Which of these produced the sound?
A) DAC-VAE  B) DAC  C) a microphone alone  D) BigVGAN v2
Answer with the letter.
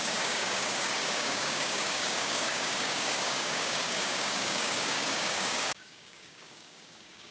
B